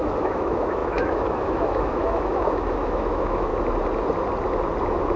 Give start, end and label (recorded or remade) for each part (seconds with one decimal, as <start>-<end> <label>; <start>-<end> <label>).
0.0-3.5 remade; 3.5-5.2 recorded